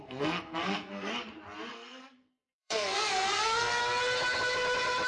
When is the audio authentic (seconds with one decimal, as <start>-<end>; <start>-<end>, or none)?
1.1-1.7; 3.8-5.1